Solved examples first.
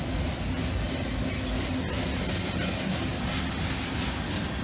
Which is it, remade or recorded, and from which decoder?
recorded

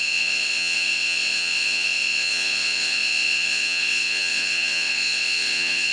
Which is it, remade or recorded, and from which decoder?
remade, vocoder, WaveNeXt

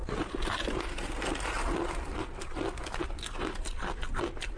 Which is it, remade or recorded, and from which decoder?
recorded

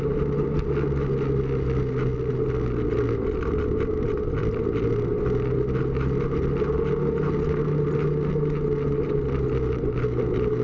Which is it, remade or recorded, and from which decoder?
recorded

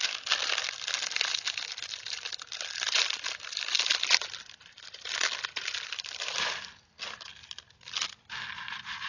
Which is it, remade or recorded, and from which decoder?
recorded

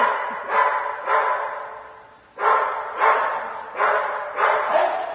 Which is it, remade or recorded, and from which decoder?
recorded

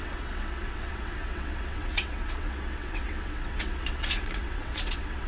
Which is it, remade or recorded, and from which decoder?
remade, vocoder, WaveNeXt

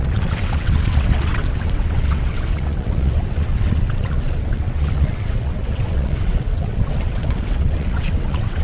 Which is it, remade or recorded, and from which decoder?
remade, vocoder, WaveNeXt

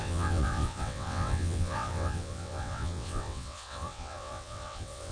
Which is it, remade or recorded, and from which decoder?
remade, vocoder, WaveNeXt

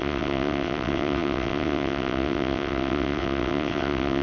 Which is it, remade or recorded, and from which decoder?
remade, vocoder, WaveNeXt